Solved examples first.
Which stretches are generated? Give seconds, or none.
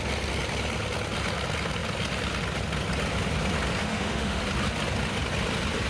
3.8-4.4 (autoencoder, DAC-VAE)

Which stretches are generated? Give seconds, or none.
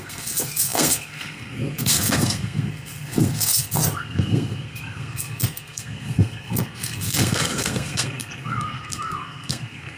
0.0-10.0 (codec, SNAC)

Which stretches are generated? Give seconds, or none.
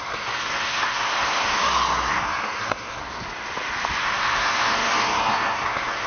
0.0-1.6 (codec, SNAC); 2.1-3.0; 4.0-6.1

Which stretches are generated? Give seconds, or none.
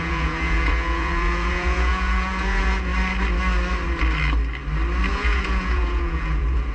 0.0-2.9 (vocoder, Vocos); 5.1-6.7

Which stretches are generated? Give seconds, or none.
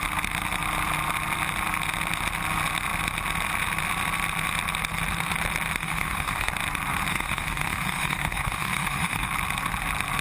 5.8-6.5 (autoencoder, DAC-VAE); 7.1-9.3